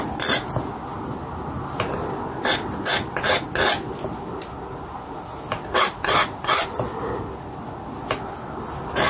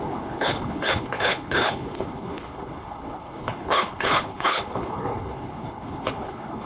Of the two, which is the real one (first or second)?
first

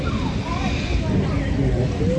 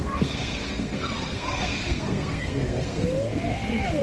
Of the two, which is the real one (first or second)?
first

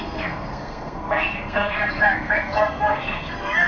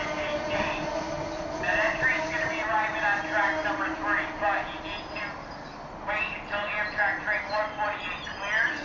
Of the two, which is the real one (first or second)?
second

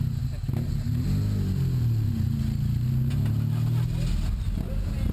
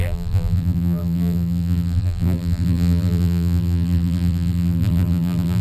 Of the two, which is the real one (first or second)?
first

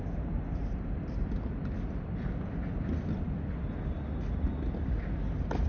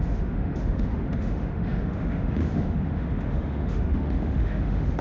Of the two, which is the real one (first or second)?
first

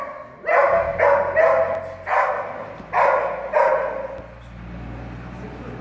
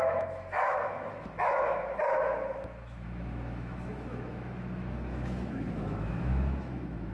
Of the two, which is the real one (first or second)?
first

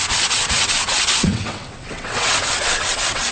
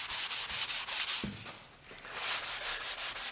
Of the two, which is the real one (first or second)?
second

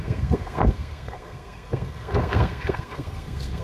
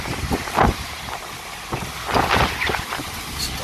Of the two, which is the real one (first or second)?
second